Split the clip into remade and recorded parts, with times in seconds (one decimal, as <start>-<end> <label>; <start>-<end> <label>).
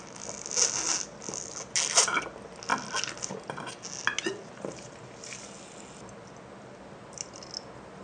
0.0-8.0 recorded